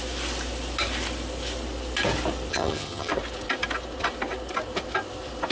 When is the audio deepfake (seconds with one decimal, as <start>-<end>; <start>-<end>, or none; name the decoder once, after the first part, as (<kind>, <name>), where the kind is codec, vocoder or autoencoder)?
2.5-3.1 (vocoder, HiFi-GAN)